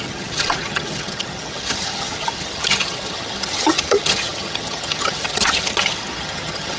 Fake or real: fake